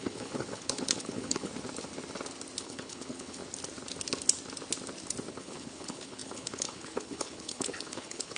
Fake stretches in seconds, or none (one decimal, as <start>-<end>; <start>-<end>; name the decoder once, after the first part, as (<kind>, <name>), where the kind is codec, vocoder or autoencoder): 0.0-1.5 (codec, HILCodec); 2.6-3.4; 5.3-8.4